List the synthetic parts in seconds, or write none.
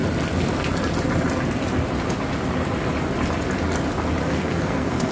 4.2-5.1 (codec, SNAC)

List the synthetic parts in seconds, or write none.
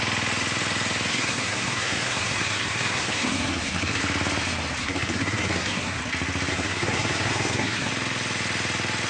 1.1-4.0 (codec, SNAC); 4.8-6.0; 6.5-7.9